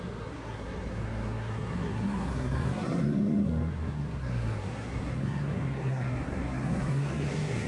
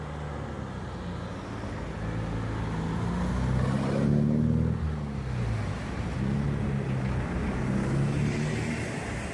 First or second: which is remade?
first